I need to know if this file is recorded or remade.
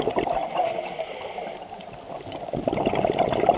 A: recorded